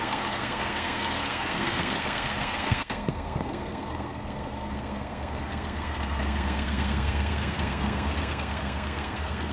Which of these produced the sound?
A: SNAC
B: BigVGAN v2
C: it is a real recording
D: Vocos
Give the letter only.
A